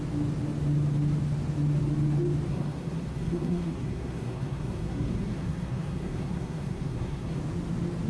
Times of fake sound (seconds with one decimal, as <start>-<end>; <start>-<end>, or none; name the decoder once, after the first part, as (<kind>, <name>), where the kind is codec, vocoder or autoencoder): 2.5-7.4 (codec, SNAC)